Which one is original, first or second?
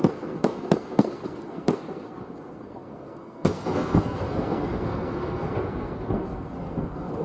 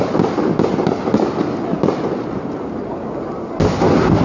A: second